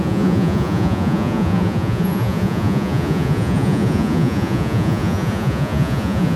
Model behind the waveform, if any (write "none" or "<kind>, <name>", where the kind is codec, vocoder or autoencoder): vocoder, Vocos